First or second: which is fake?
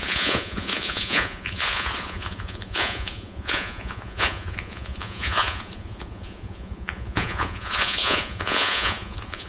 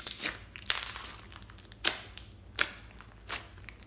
first